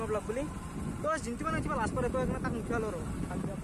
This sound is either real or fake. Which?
real